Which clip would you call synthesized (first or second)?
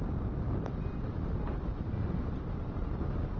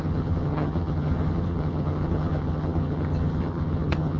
second